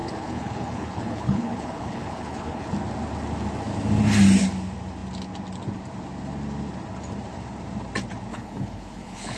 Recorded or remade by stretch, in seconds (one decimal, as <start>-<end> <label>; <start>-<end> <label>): 0.0-2.7 remade; 2.7-8.3 recorded; 8.3-9.4 remade

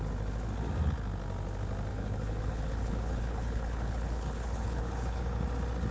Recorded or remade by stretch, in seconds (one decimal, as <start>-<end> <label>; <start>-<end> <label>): 0.0-1.9 recorded; 1.9-5.4 remade; 5.4-5.9 recorded

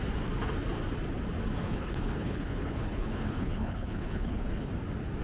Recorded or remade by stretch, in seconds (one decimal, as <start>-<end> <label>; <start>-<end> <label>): 0.0-1.6 recorded; 1.6-4.7 remade; 4.7-5.2 recorded

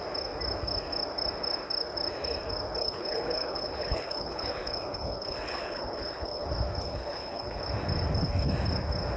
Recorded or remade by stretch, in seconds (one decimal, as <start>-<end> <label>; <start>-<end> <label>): 0.0-2.8 recorded; 2.8-6.5 remade; 6.5-6.9 recorded; 6.9-7.6 remade; 7.6-9.2 recorded